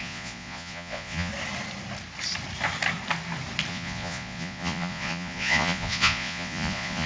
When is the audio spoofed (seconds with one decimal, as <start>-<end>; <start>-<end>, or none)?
0.0-1.3; 3.7-7.1